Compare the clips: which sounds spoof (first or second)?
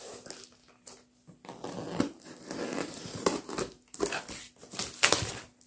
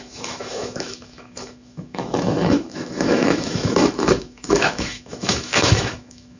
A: second